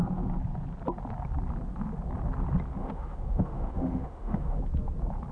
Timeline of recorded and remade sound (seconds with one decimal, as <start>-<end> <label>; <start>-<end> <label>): 0.0-2.8 recorded; 2.8-4.6 remade; 4.6-5.3 recorded